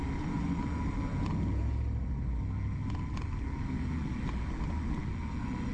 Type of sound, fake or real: real